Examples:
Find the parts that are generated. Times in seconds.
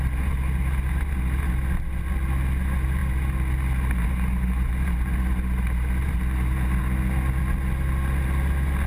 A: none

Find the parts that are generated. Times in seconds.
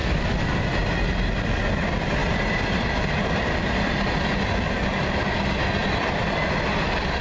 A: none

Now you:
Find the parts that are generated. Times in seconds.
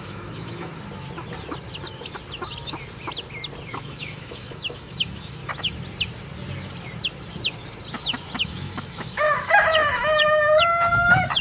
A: 0.0-0.7 (autoencoder, DAC-VAE); 3.7-5.4; 8.4-11.4